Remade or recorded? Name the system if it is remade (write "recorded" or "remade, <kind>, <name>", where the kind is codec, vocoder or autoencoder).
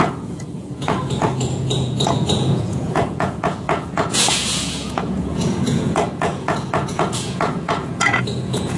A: remade, vocoder, Vocos